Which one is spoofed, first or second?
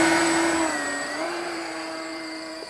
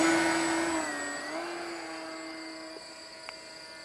first